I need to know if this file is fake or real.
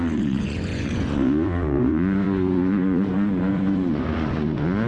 fake